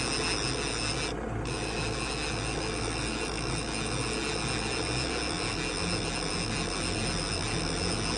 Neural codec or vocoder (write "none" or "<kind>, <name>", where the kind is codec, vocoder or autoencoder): none